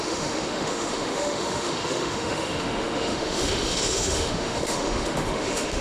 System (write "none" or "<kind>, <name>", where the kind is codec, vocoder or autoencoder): autoencoder, DAC-VAE